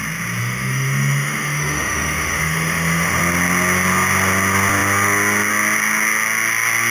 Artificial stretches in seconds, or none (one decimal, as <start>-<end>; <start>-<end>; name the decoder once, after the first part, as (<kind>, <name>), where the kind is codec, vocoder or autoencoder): 0.4-3.2 (autoencoder, DAC-VAE)